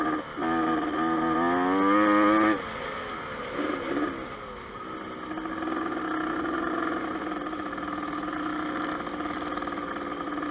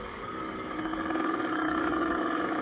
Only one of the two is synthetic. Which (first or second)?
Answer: second